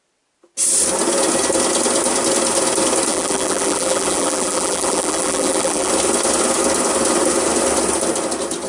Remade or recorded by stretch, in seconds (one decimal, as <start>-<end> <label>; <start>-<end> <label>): 0.0-3.1 recorded; 3.1-5.9 remade; 5.9-8.7 recorded